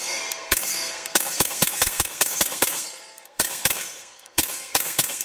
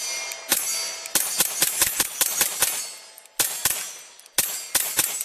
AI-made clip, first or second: first